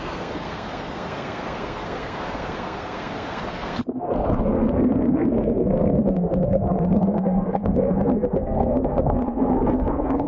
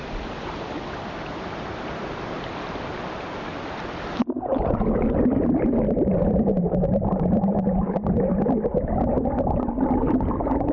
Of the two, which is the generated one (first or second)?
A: first